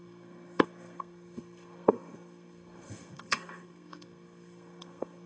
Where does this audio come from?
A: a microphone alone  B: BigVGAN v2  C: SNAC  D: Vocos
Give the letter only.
C